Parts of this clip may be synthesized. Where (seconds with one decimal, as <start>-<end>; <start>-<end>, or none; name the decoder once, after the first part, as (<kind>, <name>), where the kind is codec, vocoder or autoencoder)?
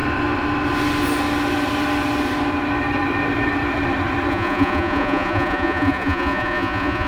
4.3-7.1 (vocoder, Vocos)